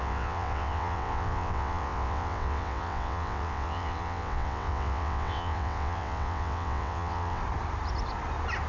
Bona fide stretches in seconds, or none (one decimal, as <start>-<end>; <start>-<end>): 7.4-8.7